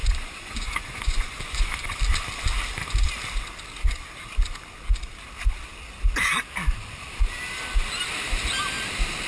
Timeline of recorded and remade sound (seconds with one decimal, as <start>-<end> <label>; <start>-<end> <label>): 0.0-2.0 remade; 2.0-9.3 recorded